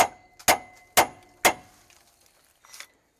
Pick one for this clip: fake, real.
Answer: real